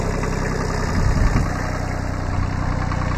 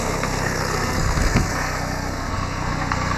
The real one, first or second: first